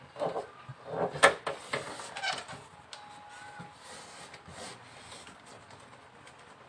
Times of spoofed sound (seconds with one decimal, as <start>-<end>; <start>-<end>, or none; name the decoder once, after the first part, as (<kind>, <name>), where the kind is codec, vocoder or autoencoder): none